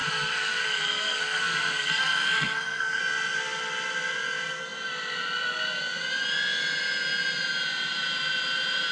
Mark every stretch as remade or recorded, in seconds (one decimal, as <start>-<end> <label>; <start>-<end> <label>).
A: 0.0-3.0 remade; 3.0-8.9 recorded